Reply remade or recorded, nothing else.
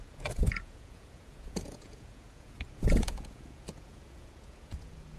remade